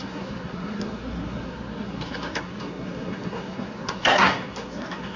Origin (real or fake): fake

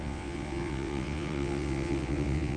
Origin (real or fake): fake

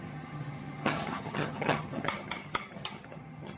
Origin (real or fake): fake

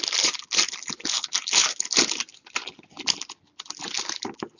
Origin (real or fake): real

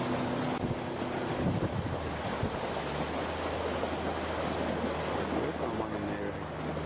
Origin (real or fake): real